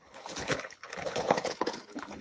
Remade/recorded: remade